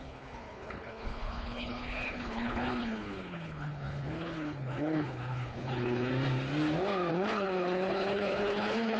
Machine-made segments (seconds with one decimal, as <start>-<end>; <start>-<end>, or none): 0.0-6.1; 7.1-9.0